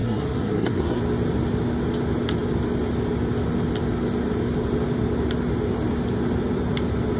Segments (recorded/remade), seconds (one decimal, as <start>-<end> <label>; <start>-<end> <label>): 0.0-1.0 remade; 1.0-7.2 recorded